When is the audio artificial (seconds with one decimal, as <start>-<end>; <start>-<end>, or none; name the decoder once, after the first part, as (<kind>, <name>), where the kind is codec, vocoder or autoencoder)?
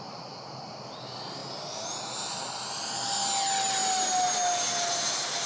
none